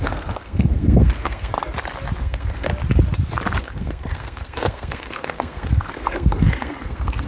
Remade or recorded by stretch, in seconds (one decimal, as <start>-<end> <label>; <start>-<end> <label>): 0.0-1.5 remade; 1.5-2.2 recorded; 2.2-2.7 remade; 2.7-3.6 recorded; 3.6-7.3 remade